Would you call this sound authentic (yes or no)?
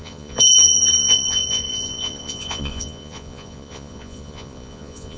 no